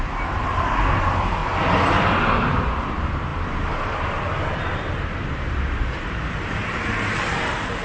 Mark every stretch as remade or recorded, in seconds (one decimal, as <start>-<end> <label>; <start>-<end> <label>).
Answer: 0.0-1.4 remade; 1.4-2.2 recorded; 2.2-7.8 remade

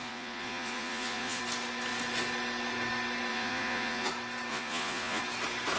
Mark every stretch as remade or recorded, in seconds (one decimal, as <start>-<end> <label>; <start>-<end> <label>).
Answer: 0.0-1.4 remade; 1.4-3.3 recorded; 3.3-4.1 remade; 4.1-4.5 recorded; 4.5-5.2 remade; 5.2-5.8 recorded